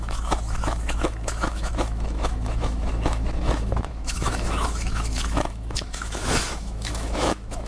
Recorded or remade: remade